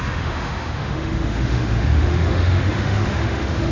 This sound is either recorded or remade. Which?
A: remade